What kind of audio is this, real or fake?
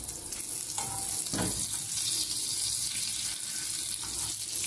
real